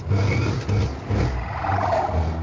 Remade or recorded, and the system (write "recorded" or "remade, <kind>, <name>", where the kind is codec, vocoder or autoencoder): recorded